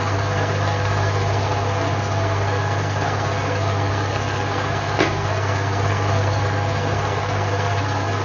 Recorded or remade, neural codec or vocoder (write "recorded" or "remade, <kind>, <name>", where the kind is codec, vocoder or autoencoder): remade, codec, SNAC